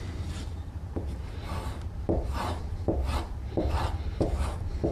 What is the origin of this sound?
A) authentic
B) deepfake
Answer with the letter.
B